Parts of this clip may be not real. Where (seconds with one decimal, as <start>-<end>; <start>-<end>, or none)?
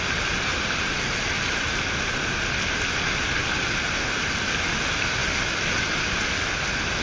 none